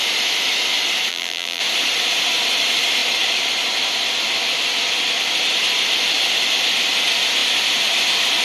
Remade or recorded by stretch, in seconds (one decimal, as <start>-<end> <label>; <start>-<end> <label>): 0.0-1.1 recorded; 1.1-1.6 remade; 1.6-8.4 recorded